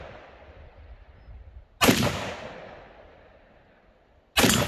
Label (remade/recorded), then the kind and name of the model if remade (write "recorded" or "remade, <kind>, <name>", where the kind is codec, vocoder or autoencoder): recorded